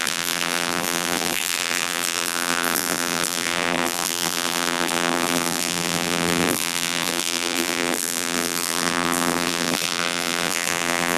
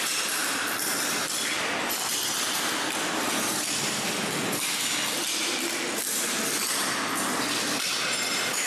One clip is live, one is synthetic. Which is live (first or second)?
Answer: second